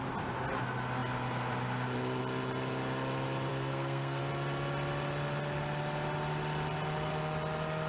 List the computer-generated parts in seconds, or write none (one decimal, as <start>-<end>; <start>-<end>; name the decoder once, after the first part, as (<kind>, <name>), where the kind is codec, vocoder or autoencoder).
3.5-4.2 (codec, SNAC)